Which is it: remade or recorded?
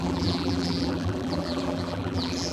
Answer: remade